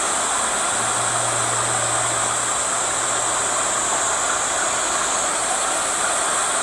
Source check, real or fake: real